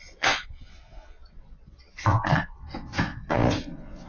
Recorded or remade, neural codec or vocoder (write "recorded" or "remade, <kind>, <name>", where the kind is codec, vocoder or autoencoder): remade, vocoder, Vocos